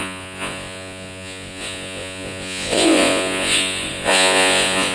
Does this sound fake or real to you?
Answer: fake